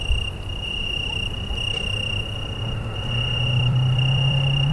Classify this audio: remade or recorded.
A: remade